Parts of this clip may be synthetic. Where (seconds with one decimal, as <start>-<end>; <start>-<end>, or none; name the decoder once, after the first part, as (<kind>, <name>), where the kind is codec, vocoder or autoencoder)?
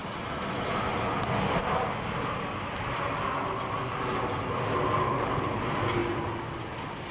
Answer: 5.0-5.6 (codec, HILCodec)